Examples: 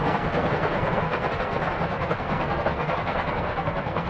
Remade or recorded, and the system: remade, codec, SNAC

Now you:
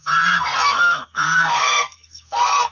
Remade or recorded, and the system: remade, codec, SNAC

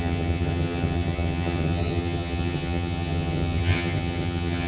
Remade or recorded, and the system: remade, vocoder, HiFi-GAN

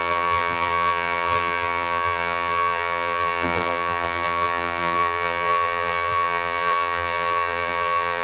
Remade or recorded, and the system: remade, vocoder, BigVGAN v2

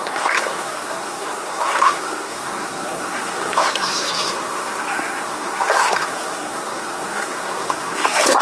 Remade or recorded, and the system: remade, codec, SNAC